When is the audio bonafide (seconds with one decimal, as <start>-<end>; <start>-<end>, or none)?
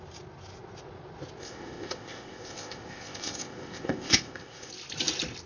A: 0.0-1.4; 4.7-5.5